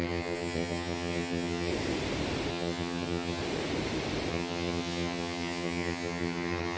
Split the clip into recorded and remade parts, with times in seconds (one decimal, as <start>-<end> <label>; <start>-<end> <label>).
0.0-1.7 remade; 1.7-2.5 recorded; 2.5-3.4 remade; 3.4-4.3 recorded; 4.3-6.8 remade